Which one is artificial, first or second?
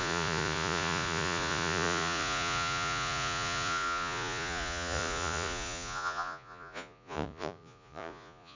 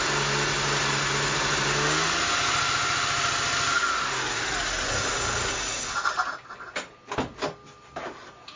first